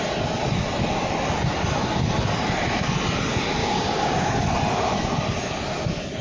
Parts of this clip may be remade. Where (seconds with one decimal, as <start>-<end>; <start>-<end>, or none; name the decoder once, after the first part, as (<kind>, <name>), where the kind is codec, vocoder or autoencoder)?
3.6-4.3 (codec, DAC)